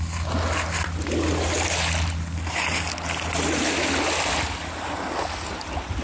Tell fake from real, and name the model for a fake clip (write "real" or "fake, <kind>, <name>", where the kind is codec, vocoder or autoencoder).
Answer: real